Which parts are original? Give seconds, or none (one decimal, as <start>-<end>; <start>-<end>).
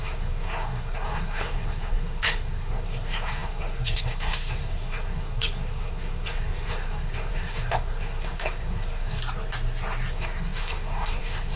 9.2-10.1